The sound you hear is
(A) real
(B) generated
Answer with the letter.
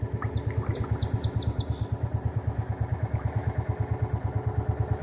A